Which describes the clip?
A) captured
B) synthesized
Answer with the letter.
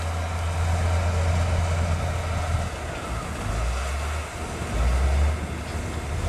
A